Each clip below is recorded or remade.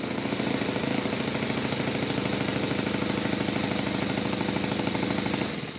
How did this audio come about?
recorded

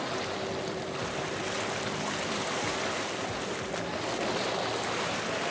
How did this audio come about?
recorded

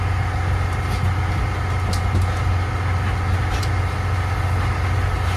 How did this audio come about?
recorded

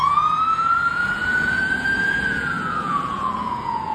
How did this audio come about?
remade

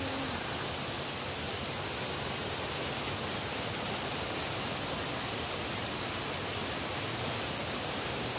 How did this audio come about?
recorded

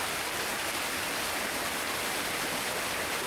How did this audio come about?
recorded